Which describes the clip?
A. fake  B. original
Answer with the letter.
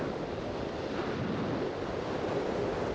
B